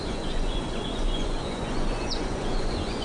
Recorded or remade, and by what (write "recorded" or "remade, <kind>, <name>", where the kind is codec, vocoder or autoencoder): remade, vocoder, Vocos